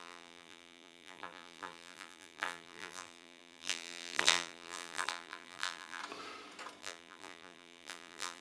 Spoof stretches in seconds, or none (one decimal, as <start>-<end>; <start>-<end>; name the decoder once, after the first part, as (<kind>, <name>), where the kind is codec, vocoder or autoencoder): 0.0-6.0 (vocoder, BigVGAN v2); 6.8-8.4